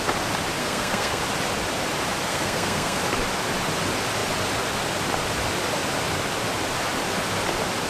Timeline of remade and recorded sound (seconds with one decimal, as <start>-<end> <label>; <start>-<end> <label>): 0.0-0.6 recorded; 0.6-1.2 remade; 1.2-2.3 recorded; 2.3-3.0 remade; 3.0-7.9 recorded